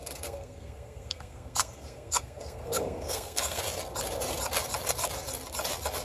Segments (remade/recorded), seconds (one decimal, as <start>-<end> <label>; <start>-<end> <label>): 0.0-3.6 remade; 3.6-6.0 recorded